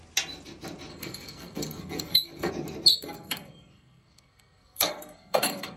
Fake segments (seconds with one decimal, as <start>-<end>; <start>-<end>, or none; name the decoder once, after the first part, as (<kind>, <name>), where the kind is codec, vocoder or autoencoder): 0.9-2.5 (codec, SNAC); 2.9-5.8